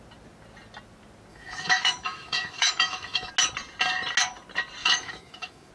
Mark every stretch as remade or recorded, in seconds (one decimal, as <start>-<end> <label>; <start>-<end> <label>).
0.0-1.3 recorded; 1.3-3.3 remade; 3.3-4.8 recorded; 4.8-5.7 remade